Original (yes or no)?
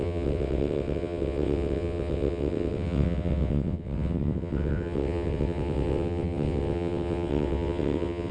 no